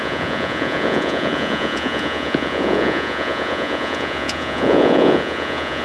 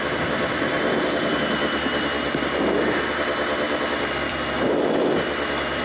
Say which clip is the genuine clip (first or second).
second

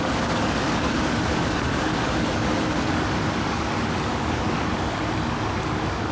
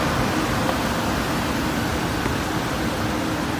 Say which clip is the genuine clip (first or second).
second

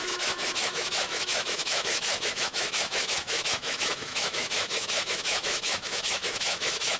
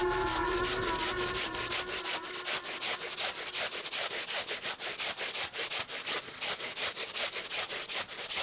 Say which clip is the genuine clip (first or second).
second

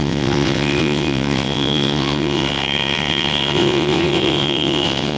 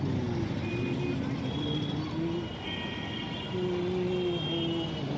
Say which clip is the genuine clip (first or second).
second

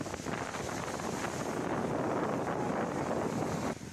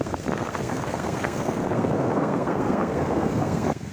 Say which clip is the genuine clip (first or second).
first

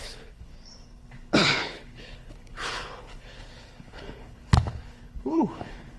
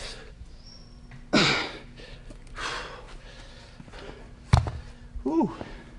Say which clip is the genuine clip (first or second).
second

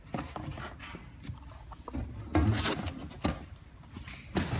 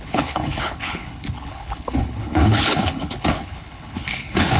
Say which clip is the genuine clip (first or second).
first